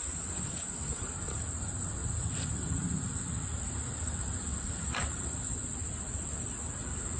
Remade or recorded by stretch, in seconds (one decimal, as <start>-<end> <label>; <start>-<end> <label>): 0.0-7.2 remade